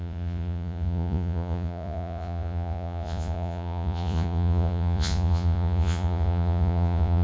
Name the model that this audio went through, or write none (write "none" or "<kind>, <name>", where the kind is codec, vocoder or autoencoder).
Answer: vocoder, Vocos